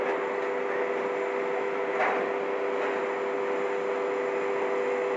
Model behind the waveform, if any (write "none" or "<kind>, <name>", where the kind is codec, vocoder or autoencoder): none